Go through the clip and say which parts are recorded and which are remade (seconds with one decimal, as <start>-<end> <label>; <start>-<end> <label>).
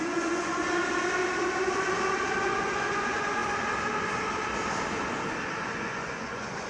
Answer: 0.0-0.6 remade; 0.6-2.4 recorded; 2.4-3.4 remade; 3.4-5.6 recorded; 5.6-6.7 remade